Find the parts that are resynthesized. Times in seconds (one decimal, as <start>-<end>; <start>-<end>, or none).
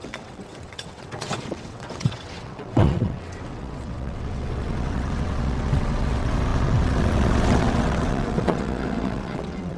0.0-9.8